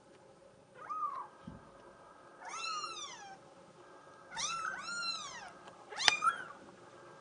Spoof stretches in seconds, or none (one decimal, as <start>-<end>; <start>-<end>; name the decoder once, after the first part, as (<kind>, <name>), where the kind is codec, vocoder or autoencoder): none